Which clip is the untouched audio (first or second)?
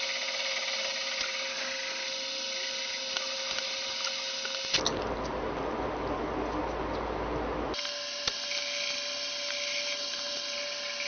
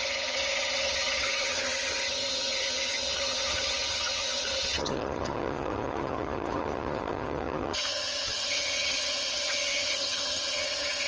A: first